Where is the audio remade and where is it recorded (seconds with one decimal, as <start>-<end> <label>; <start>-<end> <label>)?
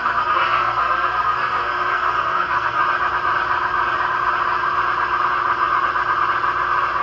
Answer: 0.0-2.8 remade; 2.8-7.0 recorded